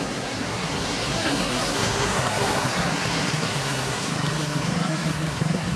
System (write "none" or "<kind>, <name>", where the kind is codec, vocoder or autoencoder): codec, SNAC